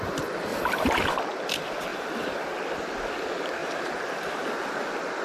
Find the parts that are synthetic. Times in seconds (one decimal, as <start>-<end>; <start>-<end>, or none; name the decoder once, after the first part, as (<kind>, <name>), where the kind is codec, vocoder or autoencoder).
0.5-1.3 (vocoder, BigVGAN v2); 1.9-2.4; 3.6-4.5